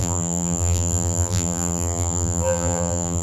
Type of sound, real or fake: fake